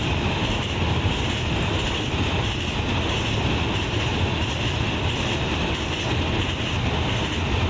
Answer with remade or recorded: recorded